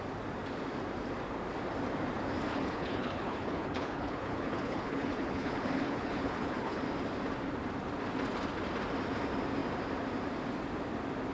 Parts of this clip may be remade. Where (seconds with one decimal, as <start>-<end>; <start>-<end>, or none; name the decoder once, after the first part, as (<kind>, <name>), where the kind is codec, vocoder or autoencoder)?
2.5-6.8 (codec, HILCodec)